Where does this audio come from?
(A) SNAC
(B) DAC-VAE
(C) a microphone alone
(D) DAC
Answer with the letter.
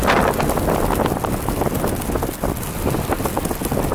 C